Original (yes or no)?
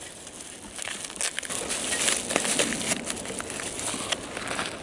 yes